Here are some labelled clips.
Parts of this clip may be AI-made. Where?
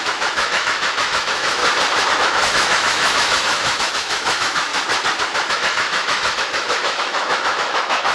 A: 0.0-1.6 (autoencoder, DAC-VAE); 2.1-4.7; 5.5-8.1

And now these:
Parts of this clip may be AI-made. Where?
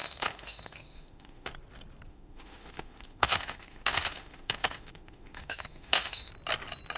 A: 0.0-1.5 (autoencoder, DAC-VAE); 2.1-6.3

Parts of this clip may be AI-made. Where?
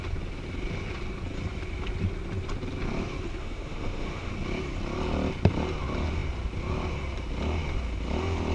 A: 3.4-4.3 (autoencoder, DAC-VAE)